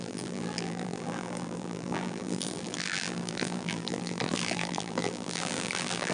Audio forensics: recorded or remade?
remade